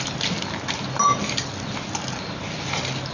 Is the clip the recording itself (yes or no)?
yes